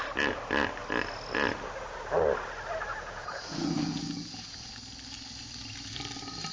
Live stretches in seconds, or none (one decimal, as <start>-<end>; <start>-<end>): 0.0-2.9; 4.7-6.5